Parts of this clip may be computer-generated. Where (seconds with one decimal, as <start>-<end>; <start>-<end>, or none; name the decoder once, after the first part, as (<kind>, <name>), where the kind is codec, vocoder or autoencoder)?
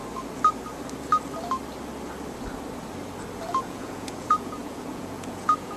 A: 3.5-5.8 (vocoder, Vocos)